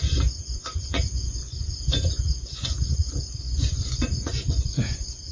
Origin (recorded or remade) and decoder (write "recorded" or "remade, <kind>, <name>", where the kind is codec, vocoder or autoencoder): remade, vocoder, Vocos